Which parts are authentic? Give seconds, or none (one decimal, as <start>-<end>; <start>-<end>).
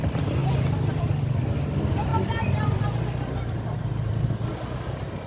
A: 0.0-5.3